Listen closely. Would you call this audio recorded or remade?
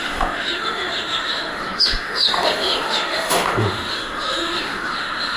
remade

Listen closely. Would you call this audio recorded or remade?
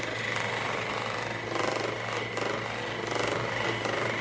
recorded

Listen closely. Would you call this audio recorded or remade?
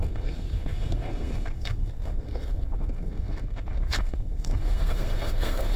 remade